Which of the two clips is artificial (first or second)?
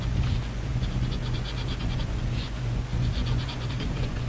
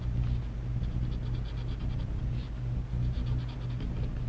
first